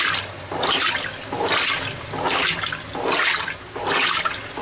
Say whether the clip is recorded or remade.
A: recorded